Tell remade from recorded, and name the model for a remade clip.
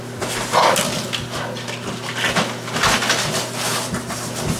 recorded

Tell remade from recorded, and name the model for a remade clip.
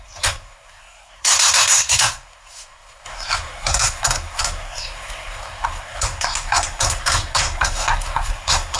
remade, codec, SNAC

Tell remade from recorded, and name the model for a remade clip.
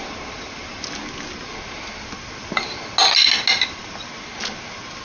recorded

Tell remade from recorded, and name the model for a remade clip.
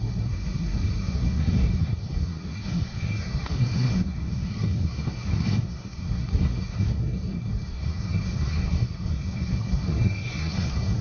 remade, codec, SNAC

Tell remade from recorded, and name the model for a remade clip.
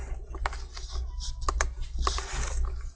recorded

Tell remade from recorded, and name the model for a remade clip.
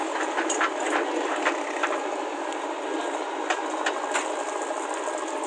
recorded